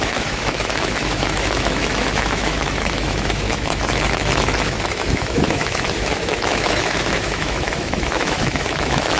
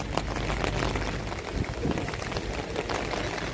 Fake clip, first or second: first